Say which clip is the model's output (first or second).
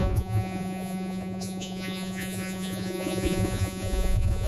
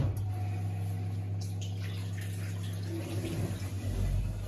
first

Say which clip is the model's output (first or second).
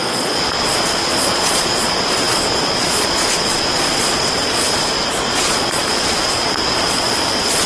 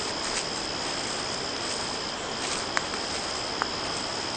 first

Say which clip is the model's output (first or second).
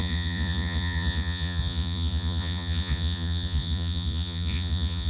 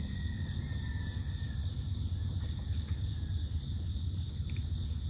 first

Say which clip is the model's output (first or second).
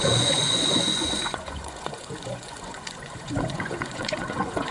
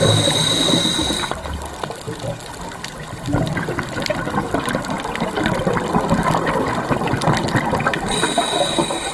first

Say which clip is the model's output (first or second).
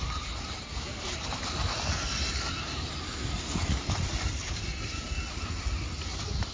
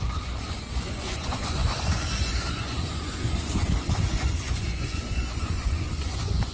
second